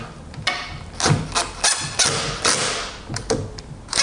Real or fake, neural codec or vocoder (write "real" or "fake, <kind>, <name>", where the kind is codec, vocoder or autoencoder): real